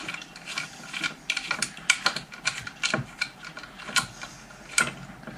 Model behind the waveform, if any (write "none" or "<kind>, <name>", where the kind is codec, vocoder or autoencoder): none